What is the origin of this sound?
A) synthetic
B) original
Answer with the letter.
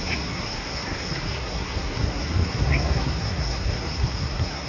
A